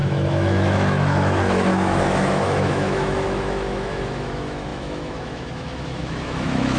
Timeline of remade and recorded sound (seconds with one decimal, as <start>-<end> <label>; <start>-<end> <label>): 0.0-6.8 remade